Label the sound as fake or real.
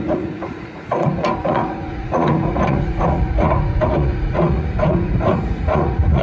fake